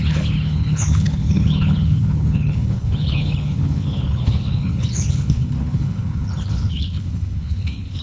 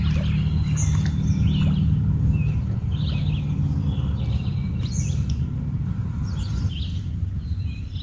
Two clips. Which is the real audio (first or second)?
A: second